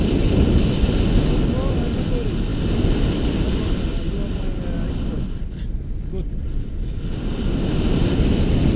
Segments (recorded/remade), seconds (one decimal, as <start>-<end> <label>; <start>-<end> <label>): 0.0-8.8 recorded